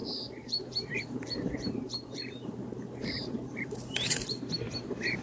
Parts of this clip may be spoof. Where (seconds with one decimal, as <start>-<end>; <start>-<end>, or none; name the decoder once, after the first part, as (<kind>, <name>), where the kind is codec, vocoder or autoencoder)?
0.0-5.2 (vocoder, BigVGAN v2)